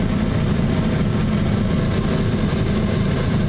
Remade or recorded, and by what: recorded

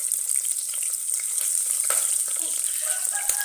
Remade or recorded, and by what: recorded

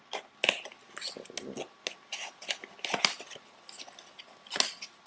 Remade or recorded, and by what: recorded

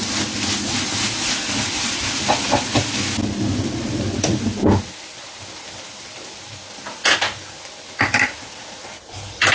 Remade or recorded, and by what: recorded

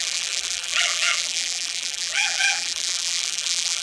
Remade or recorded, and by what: remade, vocoder, BigVGAN v2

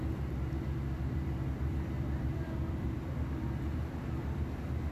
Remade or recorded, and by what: remade, vocoder, BigVGAN v2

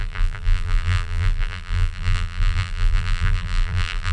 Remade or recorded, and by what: remade, vocoder, BigVGAN v2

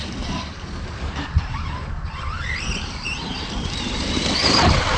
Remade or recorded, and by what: remade, vocoder, BigVGAN v2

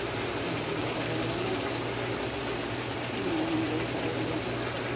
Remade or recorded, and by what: recorded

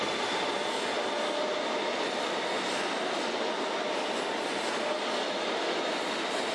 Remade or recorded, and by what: recorded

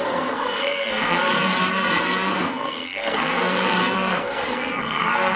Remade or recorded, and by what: remade, codec, SNAC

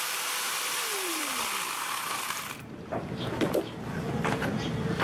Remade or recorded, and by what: remade, vocoder, BigVGAN v2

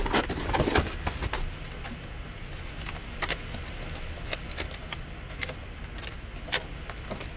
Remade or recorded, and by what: recorded